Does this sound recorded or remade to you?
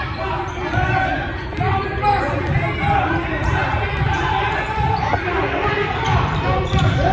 recorded